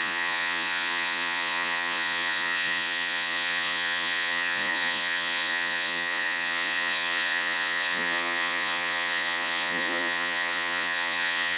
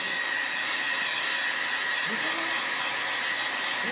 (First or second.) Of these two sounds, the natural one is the second